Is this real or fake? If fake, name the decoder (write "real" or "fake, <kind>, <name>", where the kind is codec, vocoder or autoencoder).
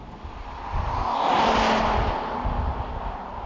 real